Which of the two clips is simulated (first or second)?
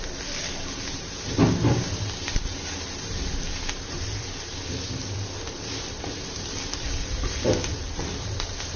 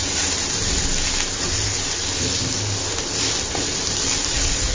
first